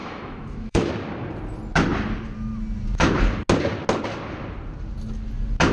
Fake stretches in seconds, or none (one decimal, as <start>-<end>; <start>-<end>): 0.0-0.9